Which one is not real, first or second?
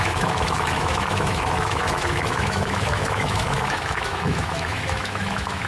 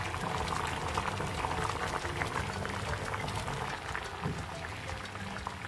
first